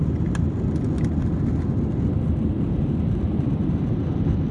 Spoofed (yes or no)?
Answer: no